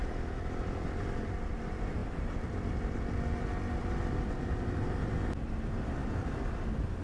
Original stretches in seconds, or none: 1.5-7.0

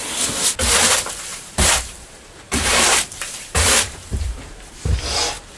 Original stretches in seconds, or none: 0.0-1.3; 4.7-5.6